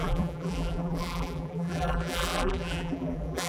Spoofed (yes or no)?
yes